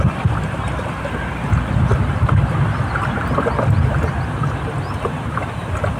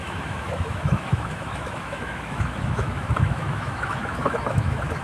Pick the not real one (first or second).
second